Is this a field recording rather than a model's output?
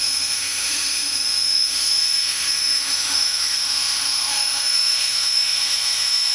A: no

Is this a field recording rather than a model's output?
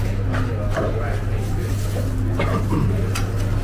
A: yes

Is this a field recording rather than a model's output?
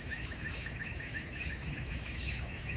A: no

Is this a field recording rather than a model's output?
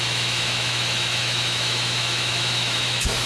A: no